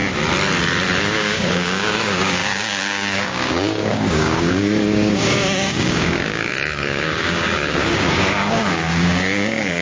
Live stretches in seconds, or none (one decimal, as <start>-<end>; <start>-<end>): 0.0-1.0